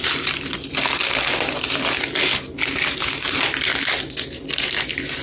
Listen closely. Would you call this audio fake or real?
real